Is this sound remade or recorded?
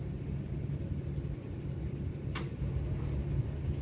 recorded